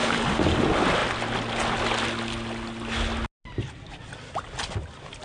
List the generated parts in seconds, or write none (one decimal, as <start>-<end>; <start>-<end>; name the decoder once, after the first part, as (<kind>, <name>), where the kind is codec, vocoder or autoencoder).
0.0-0.6 (codec, DAC)